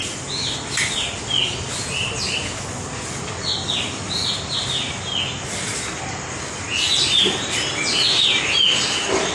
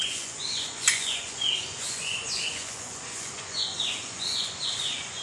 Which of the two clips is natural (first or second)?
first